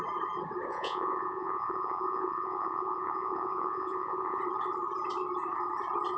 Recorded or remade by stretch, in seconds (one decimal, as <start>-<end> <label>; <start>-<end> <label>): 0.0-0.7 recorded; 0.7-4.4 remade; 4.4-6.2 recorded